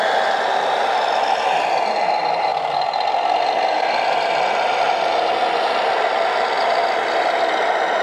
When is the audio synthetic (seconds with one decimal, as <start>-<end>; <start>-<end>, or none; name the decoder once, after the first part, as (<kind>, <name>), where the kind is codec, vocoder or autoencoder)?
none